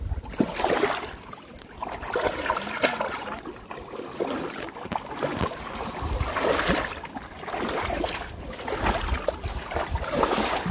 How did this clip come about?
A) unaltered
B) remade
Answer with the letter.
A